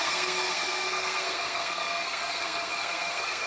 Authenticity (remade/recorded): remade